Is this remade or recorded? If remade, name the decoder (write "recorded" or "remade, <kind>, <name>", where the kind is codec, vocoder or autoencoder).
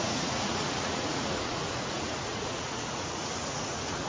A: remade, vocoder, Vocos